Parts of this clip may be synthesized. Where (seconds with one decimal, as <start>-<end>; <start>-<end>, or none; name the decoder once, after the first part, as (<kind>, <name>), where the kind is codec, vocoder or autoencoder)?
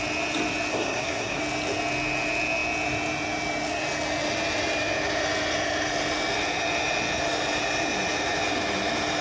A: 0.7-1.4 (codec, SNAC)